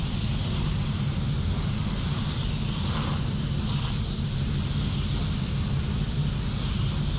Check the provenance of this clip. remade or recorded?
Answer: recorded